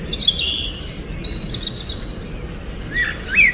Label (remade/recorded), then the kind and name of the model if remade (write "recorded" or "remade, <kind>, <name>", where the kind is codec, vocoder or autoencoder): recorded